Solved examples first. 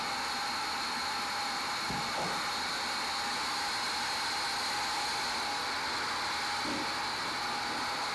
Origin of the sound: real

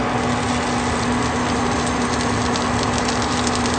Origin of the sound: real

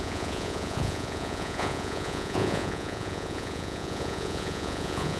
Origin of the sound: fake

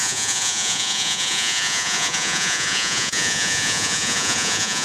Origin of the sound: fake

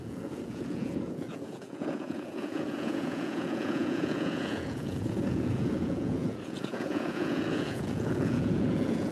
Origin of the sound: fake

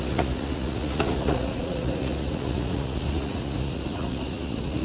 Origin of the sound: fake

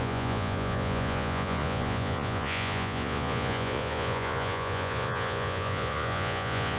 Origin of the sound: fake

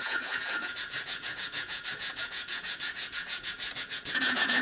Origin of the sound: fake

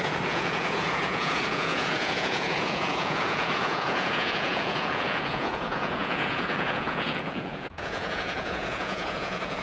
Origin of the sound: fake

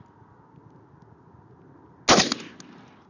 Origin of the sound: real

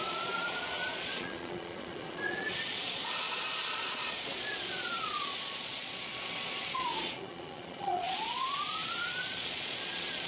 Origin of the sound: fake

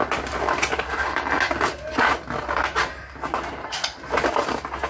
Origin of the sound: real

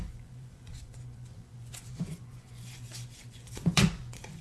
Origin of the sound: fake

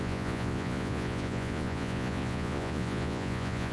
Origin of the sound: fake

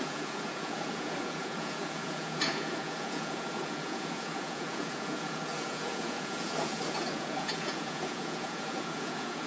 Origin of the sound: fake